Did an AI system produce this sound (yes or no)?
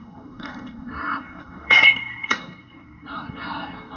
yes